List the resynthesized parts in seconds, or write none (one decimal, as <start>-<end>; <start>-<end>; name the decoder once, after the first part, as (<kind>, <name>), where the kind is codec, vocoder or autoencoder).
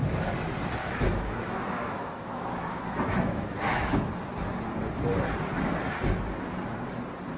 0.8-4.1 (autoencoder, DAC-VAE)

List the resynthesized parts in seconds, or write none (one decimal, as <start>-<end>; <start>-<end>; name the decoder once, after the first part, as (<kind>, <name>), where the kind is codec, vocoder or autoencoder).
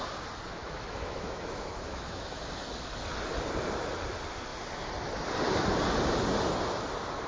0.6-2.4 (autoencoder, DAC-VAE)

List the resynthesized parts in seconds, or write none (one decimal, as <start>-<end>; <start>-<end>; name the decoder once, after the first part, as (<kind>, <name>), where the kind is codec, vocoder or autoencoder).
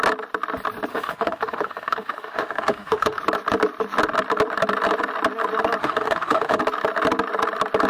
0.9-3.2 (autoencoder, DAC-VAE); 5.8-6.6